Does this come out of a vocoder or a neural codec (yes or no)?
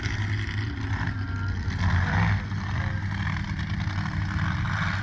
no